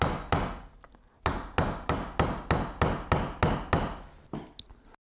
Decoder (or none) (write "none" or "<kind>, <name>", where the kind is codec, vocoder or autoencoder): none